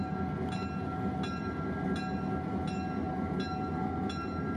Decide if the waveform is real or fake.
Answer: real